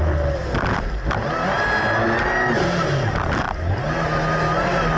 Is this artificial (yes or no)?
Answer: no